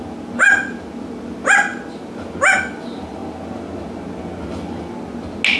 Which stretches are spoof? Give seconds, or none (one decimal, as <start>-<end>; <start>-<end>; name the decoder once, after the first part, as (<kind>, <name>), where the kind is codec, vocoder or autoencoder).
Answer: none